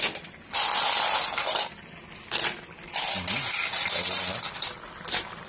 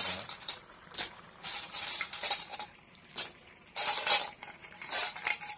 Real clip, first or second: first